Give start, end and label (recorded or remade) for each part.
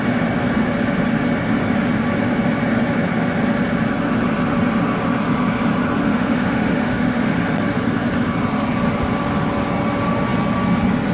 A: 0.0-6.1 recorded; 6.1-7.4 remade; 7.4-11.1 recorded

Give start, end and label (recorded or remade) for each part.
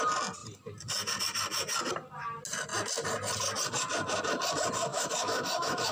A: 0.0-4.9 recorded; 4.9-5.9 remade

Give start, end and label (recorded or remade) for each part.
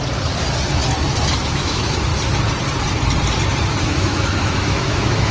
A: 0.0-1.4 recorded; 1.4-2.1 remade; 2.1-3.8 recorded; 3.8-5.3 remade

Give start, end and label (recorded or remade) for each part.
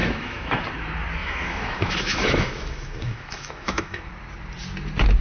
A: 0.0-0.6 remade; 0.6-1.2 recorded; 1.2-4.1 remade; 4.1-5.2 recorded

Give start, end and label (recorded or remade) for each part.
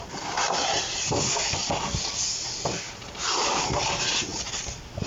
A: 0.0-5.1 recorded